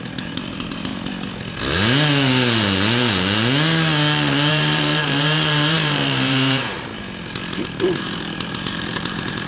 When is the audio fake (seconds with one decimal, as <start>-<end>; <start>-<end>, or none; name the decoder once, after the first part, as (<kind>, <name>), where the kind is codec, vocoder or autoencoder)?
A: 0.0-0.9 (vocoder, BigVGAN v2); 4.5-6.9; 8.0-9.5